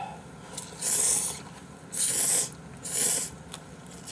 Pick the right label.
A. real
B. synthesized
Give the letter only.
A